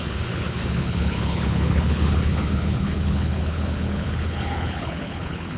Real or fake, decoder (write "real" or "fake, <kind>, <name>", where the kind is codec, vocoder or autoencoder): fake, codec, HILCodec